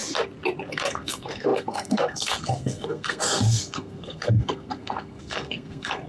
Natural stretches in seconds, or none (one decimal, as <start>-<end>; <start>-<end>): 0.0-0.7